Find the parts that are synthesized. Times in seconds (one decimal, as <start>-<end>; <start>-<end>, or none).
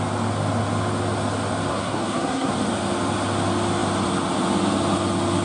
1.7-2.5